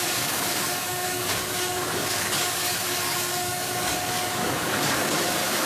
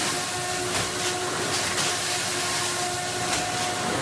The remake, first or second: first